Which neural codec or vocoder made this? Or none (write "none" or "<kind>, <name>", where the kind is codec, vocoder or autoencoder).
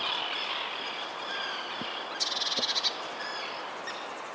none